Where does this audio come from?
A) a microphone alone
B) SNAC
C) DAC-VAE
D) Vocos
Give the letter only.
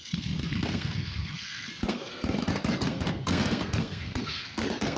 B